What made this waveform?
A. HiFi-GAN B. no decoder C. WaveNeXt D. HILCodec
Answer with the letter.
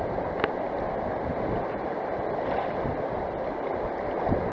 B